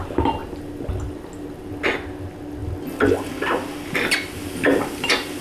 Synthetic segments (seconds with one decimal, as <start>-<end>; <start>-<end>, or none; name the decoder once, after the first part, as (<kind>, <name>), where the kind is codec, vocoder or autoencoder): none